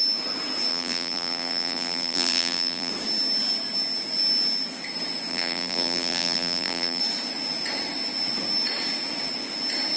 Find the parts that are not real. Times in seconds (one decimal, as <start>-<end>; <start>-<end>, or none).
0.7-2.9; 5.3-7.0